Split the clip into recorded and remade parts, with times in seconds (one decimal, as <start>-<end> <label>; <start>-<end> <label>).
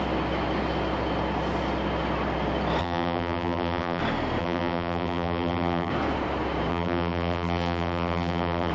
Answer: 0.0-2.8 recorded; 2.8-4.0 remade; 4.0-4.4 recorded; 4.4-5.9 remade; 5.9-6.7 recorded; 6.7-8.7 remade